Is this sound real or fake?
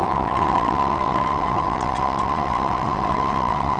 fake